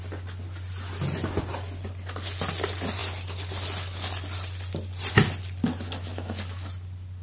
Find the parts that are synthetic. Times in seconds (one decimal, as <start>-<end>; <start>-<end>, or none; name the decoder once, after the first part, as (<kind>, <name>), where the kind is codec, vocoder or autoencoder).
none